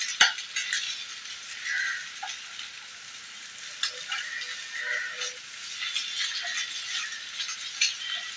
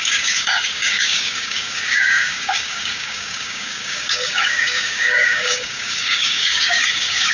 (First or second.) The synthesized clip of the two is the second